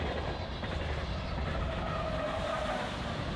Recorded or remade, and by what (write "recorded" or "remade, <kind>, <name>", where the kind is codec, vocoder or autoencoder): recorded